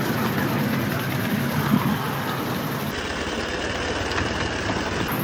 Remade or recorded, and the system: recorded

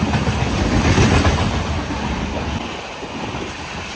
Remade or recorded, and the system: recorded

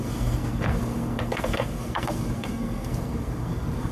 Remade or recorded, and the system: remade, codec, SNAC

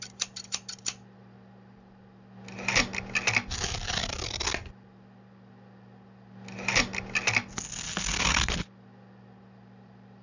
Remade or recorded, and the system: recorded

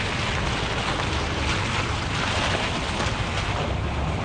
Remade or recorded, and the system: recorded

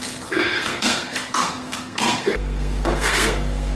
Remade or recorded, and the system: remade, codec, SNAC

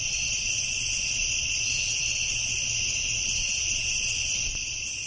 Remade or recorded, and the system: recorded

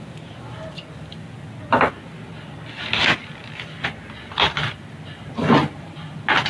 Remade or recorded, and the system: recorded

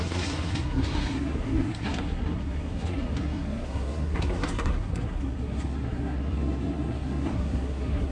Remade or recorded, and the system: remade, codec, SNAC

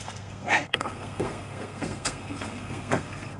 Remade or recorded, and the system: remade, codec, SNAC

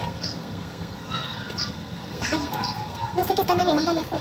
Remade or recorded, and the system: remade, codec, SNAC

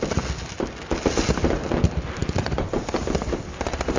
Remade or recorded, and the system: recorded